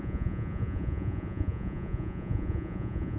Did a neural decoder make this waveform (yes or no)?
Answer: yes